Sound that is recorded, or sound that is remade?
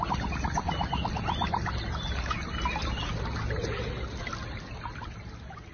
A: recorded